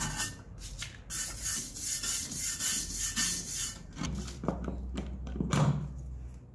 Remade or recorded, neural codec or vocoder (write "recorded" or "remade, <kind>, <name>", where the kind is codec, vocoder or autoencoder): recorded